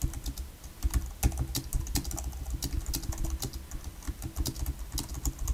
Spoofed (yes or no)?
no